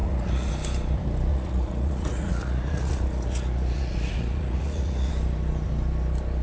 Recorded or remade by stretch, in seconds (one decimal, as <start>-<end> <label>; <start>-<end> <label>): 0.0-0.5 remade; 0.5-1.3 recorded; 1.3-5.1 remade; 5.1-6.4 recorded